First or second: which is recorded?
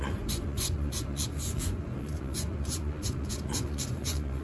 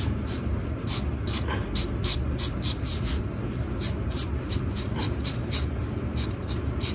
second